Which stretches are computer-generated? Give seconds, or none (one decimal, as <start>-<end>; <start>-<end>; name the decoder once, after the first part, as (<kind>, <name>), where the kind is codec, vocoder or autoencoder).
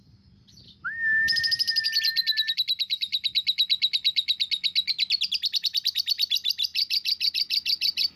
none